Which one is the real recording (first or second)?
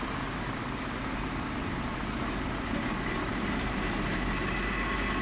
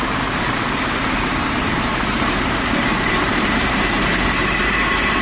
first